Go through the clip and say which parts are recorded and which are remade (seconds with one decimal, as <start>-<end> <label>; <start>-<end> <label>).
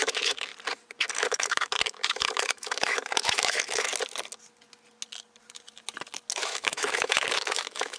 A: 0.0-0.5 remade; 0.5-1.2 recorded; 1.2-3.9 remade; 3.9-6.4 recorded; 6.4-8.0 remade